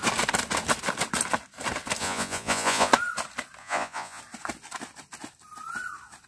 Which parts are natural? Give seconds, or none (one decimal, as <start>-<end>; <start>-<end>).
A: 0.0-2.0; 2.9-3.6; 4.2-6.3